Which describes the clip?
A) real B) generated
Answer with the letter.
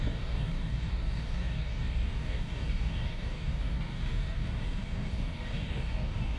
B